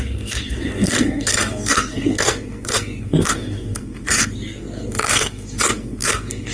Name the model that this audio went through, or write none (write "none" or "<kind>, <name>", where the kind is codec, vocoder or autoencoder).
codec, SNAC